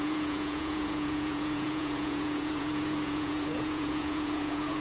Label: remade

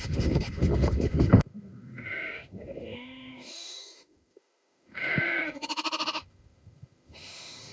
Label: remade